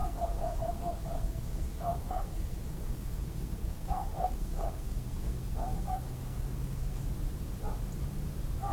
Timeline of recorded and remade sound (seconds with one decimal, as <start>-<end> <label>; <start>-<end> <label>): 0.0-7.0 remade; 7.0-8.7 recorded